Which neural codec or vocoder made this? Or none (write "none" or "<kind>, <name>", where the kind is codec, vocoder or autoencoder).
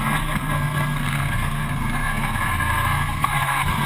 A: codec, SNAC